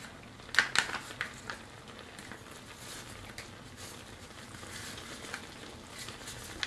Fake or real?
real